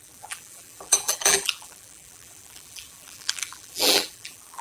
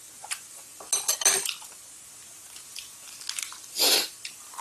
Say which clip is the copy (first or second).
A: first